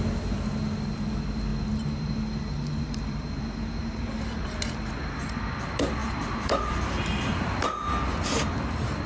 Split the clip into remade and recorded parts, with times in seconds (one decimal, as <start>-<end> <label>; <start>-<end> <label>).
0.0-1.5 recorded; 1.5-4.6 remade; 4.6-6.0 recorded; 6.0-7.4 remade; 7.4-9.1 recorded